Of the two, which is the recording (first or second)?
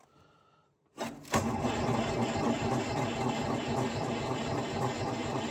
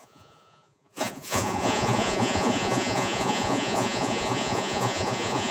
first